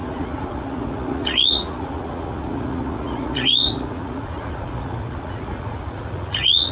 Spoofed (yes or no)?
yes